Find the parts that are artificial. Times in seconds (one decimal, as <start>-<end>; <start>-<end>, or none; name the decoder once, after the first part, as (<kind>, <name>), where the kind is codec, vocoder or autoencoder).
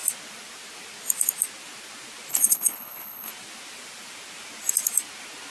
2.3-3.3 (codec, HILCodec)